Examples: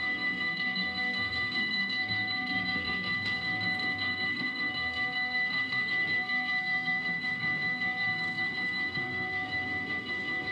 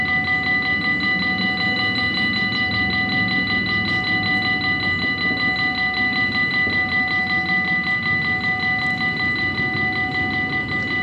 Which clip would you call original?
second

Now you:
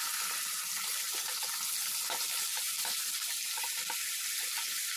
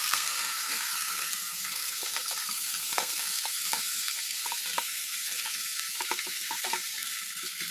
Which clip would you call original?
first